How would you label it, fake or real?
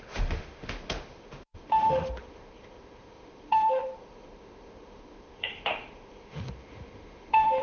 fake